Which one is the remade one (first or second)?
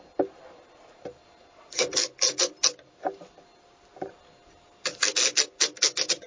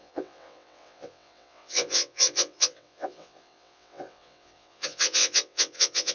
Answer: second